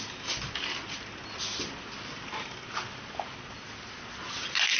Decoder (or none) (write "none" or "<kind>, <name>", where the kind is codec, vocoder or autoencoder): none